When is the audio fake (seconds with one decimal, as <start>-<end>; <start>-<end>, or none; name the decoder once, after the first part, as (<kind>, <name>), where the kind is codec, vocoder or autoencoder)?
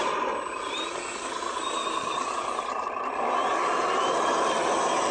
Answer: none